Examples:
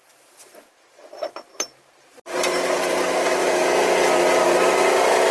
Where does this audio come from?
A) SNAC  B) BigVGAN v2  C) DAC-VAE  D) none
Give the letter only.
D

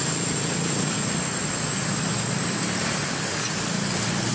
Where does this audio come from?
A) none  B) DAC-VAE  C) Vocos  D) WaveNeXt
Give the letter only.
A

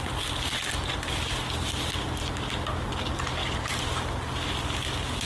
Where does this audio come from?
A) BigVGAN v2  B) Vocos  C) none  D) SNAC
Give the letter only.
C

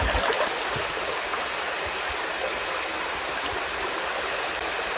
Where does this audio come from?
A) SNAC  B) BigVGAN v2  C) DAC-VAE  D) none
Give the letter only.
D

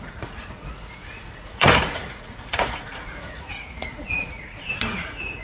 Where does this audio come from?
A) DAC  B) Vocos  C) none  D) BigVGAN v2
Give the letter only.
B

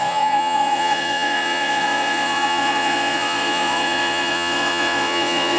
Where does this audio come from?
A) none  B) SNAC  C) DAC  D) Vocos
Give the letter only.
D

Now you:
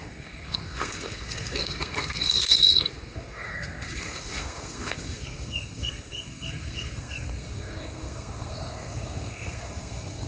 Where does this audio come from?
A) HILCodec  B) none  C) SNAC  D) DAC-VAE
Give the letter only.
C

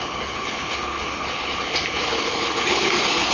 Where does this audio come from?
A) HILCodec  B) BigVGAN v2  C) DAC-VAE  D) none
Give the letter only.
A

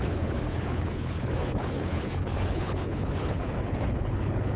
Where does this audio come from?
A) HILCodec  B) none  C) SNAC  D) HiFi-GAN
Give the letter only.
A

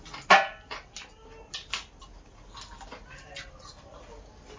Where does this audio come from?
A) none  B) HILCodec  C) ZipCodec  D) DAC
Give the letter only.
A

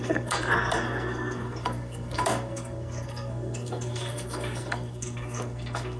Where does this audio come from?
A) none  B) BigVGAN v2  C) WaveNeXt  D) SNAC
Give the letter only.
D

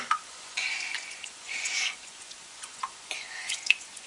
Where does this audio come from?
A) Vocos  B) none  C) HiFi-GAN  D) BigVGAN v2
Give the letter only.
A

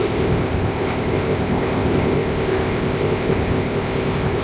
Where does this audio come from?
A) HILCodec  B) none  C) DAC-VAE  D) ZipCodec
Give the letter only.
D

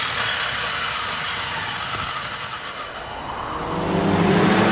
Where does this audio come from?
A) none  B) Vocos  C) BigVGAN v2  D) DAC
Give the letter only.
A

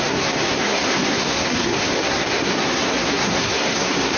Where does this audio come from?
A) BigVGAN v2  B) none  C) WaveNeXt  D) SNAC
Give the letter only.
D